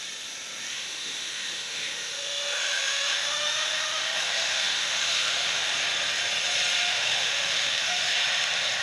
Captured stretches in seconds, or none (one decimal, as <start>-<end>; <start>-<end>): 0.0-0.7; 5.7-6.8; 8.2-8.8